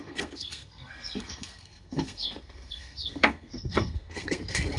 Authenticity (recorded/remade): remade